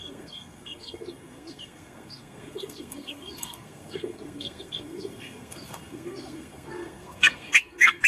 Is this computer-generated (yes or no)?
yes